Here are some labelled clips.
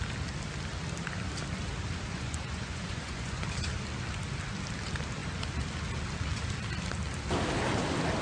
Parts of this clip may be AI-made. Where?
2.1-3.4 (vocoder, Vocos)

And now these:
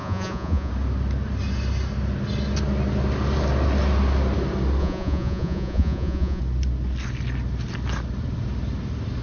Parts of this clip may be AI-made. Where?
0.0-0.7 (vocoder, Vocos); 4.8-6.4

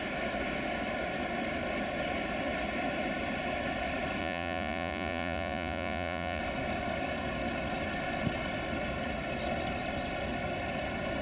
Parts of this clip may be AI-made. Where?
4.2-6.4 (vocoder, Vocos)

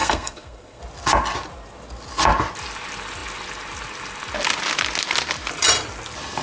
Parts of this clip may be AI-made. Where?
0.0-0.8 (codec, SNAC)

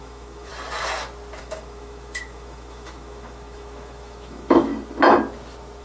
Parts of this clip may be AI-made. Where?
0.0-0.5 (autoencoder, DAC-VAE); 1.4-4.7